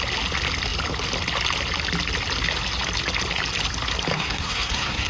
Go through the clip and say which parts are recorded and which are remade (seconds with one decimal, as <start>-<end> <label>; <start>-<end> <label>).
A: 0.0-4.1 recorded; 4.1-5.1 remade